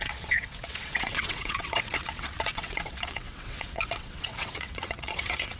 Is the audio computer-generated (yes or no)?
yes